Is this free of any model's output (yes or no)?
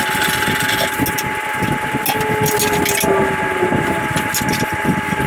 yes